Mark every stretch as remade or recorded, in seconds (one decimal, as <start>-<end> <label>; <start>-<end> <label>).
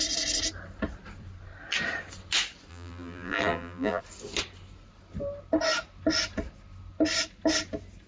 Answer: 0.0-2.7 recorded; 2.7-4.0 remade; 4.0-8.1 recorded